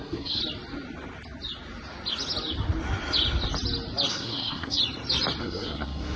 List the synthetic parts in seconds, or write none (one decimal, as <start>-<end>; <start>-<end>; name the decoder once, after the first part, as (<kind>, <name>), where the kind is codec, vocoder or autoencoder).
0.0-0.4 (codec, SNAC); 4.1-4.8; 5.4-6.2